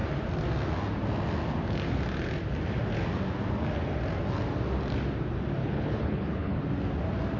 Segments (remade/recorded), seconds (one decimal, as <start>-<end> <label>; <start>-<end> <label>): 0.0-5.6 recorded; 5.6-6.6 remade; 6.6-7.4 recorded